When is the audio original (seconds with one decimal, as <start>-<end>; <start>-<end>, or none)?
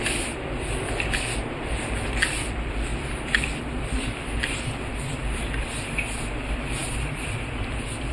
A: none